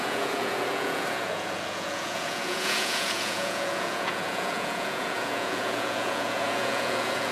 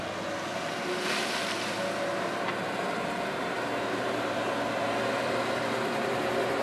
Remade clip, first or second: first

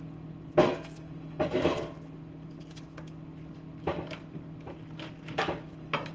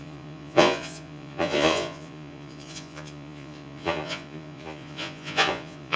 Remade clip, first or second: second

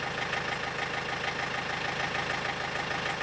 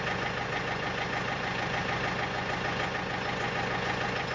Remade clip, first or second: second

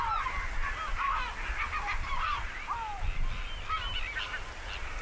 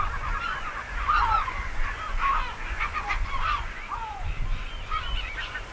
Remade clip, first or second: second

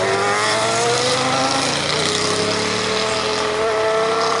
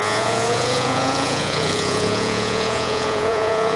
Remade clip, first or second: second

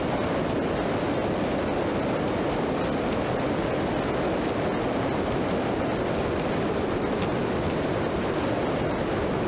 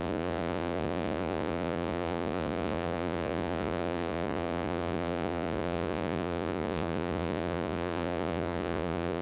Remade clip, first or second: second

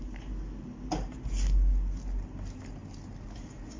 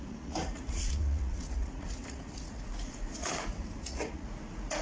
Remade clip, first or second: second